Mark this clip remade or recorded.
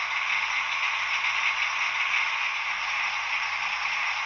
recorded